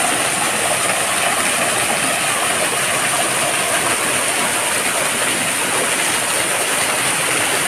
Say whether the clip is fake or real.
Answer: real